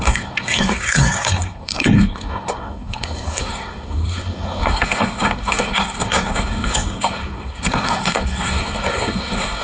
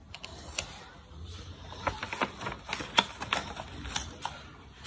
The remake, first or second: first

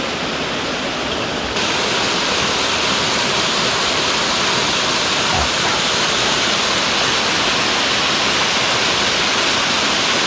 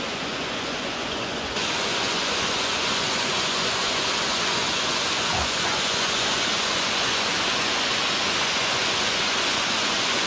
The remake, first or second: second